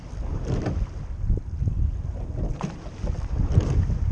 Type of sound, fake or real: real